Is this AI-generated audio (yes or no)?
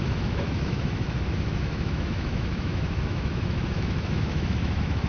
yes